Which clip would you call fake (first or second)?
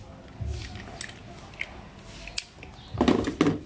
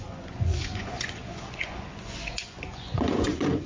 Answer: second